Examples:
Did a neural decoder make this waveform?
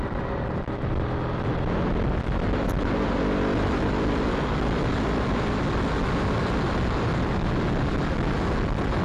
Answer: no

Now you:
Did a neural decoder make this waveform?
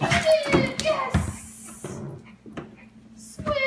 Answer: no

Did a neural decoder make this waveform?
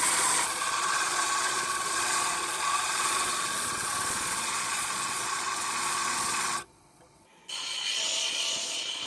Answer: yes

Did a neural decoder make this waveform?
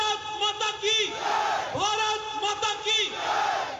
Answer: no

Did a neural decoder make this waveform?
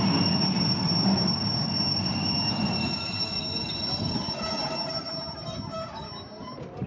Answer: no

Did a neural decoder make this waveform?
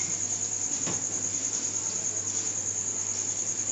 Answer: yes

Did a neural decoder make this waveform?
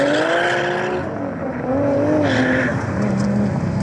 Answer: no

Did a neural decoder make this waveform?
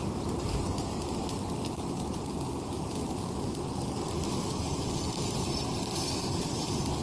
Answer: no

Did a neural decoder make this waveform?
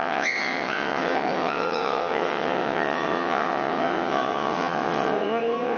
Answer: yes